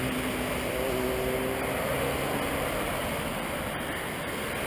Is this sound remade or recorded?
recorded